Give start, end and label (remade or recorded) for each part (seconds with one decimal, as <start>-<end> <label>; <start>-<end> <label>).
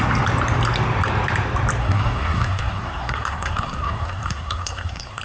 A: 0.0-1.8 recorded; 1.8-5.2 remade